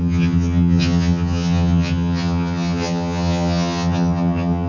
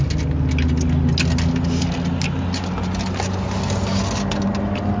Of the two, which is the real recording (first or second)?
second